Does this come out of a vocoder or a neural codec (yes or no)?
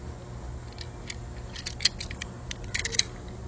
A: no